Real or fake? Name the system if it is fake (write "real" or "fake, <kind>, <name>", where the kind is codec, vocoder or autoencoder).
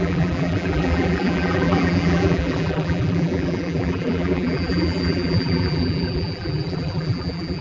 fake, vocoder, BigVGAN v2